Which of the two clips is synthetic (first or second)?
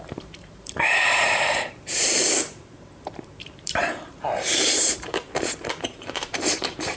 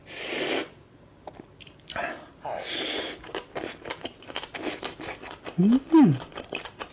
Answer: first